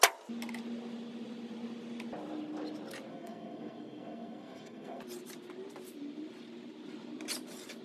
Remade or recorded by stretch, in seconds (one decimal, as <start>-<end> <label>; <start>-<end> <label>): 0.0-3.1 recorded; 3.1-5.0 remade; 5.0-7.8 recorded